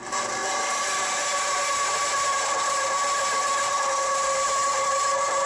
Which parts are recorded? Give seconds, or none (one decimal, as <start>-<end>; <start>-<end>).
0.0-5.5